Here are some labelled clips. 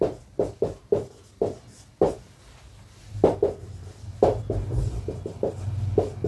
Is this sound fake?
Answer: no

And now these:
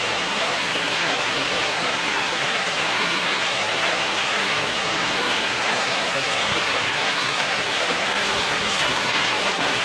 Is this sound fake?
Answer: yes